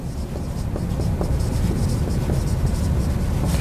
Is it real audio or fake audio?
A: real